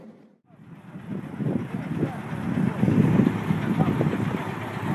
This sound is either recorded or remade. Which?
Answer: recorded